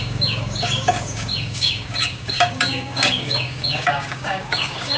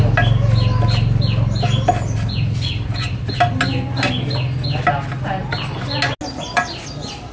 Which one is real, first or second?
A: second